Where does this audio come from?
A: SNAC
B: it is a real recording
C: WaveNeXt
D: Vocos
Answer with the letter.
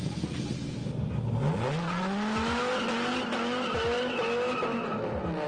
B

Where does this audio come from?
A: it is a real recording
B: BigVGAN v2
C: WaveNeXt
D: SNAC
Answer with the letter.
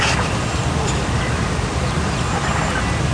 A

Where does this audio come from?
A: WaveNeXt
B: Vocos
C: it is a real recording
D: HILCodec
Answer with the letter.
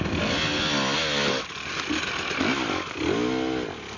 C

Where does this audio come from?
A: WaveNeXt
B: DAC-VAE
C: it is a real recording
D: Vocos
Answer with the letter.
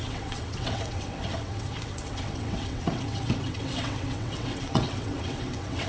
A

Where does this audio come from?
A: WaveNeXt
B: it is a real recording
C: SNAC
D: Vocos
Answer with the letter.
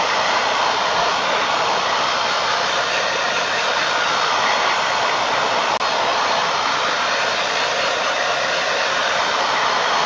B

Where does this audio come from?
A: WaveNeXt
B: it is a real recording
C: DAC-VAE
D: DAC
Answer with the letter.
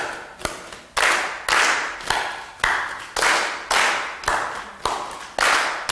B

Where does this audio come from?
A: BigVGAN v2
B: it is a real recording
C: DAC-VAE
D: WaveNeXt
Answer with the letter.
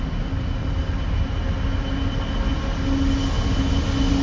B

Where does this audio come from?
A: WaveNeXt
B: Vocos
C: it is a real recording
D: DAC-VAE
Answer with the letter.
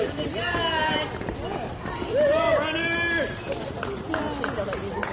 C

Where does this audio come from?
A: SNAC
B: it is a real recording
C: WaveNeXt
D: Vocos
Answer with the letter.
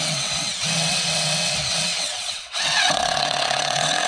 C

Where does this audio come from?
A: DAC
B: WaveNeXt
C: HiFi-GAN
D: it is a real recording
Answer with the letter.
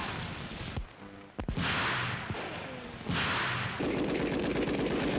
D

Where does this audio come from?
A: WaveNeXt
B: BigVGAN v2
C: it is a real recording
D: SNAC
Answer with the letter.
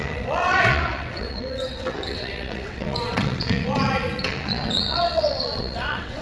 A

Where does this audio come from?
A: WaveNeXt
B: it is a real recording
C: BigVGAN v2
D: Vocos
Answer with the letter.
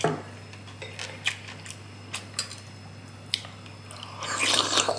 B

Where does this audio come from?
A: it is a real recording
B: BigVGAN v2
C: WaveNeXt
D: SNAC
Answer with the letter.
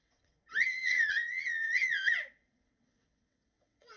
C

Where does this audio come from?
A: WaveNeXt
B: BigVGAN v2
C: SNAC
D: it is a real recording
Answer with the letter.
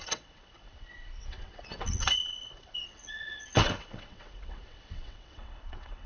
A